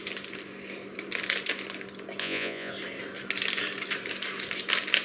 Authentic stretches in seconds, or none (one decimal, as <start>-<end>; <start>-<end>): 0.0-2.2; 2.7-5.0